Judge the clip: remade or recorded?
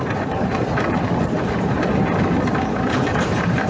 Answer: remade